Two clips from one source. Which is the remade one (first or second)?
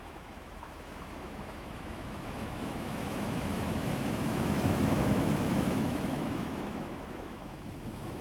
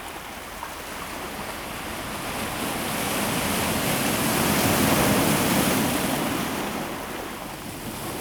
first